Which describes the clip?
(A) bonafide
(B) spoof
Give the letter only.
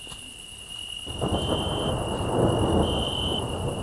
A